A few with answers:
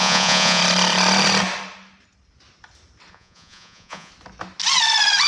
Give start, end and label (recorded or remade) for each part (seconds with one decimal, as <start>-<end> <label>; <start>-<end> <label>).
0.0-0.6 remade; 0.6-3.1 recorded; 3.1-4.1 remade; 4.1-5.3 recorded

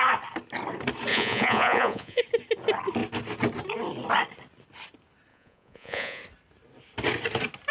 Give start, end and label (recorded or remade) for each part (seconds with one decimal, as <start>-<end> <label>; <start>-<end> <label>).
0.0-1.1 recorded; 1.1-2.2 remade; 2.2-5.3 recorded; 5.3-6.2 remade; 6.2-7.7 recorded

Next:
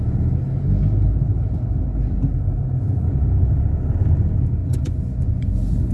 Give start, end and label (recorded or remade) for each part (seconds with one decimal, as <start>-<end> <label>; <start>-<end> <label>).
0.0-4.6 recorded; 4.6-5.9 remade

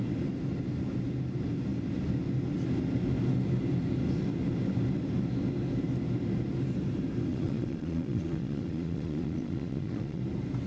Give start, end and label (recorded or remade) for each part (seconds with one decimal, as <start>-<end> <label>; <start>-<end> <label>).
0.0-7.3 recorded; 7.3-10.2 remade; 10.2-10.7 recorded